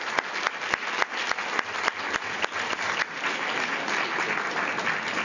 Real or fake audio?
real